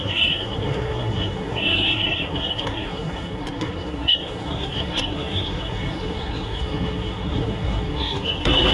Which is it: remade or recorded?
remade